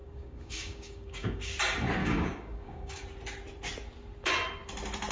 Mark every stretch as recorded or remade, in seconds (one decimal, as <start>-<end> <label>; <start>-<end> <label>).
0.0-1.5 remade; 1.5-2.0 recorded; 2.0-3.0 remade; 3.0-5.1 recorded